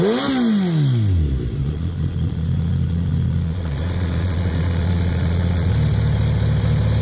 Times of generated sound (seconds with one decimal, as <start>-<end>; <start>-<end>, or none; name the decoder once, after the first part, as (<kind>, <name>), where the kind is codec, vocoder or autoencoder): 1.6-5.7 (vocoder, Vocos)

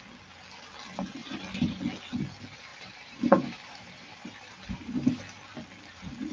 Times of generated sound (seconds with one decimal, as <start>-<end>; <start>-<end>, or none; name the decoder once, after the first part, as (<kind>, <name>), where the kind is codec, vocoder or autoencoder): 1.2-1.8 (vocoder, BigVGAN v2); 2.7-5.2